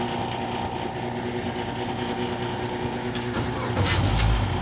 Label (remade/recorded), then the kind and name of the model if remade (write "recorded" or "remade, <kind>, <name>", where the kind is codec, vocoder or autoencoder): recorded